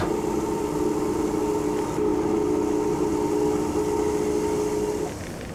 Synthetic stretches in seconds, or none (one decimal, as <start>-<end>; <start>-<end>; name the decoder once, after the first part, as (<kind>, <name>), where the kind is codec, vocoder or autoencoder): none